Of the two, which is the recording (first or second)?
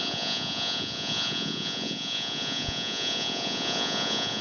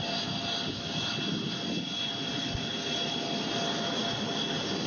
second